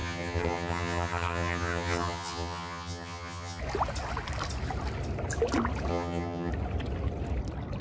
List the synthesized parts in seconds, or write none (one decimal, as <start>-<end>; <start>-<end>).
0.0-3.6; 5.9-6.5